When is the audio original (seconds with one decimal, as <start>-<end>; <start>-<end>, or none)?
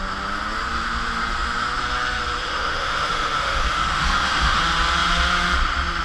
0.0-2.4; 4.6-6.0